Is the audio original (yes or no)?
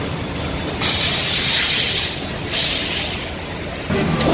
no